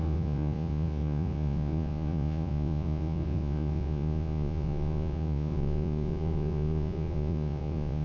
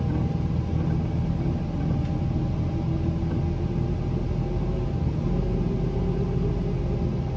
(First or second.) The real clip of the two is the second